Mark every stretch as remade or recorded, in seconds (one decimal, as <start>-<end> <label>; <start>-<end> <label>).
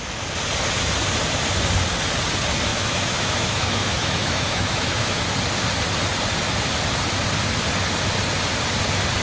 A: 0.0-2.7 recorded; 2.7-5.2 remade; 5.2-9.2 recorded